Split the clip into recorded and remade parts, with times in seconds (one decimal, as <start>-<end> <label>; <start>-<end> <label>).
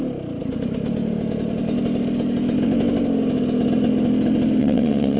0.0-4.6 recorded; 4.6-5.2 remade